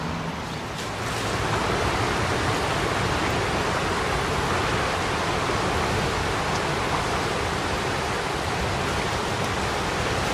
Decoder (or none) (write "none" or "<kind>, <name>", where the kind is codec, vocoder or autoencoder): none